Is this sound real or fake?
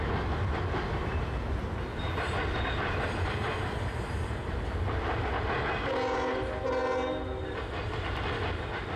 real